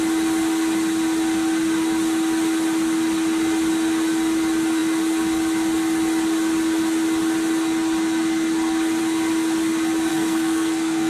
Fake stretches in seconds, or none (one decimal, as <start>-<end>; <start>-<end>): 10.1-11.1